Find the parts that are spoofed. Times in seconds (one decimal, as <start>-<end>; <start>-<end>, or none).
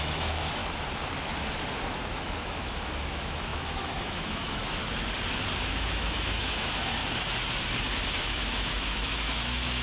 0.0-0.6; 2.1-4.8; 5.7-7.0; 8.2-9.8